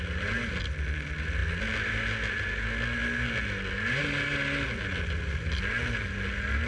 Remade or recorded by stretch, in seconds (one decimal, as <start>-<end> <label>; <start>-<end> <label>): 0.0-6.7 recorded